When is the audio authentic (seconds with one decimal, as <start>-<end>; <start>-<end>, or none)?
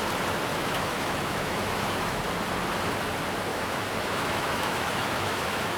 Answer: 0.0-0.5; 2.2-3.5